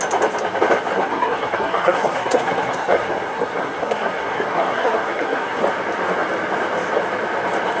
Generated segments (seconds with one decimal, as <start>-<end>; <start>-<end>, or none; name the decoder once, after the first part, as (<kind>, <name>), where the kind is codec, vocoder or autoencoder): 0.9-5.6 (codec, SNAC)